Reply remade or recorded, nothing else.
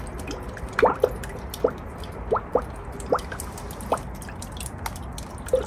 recorded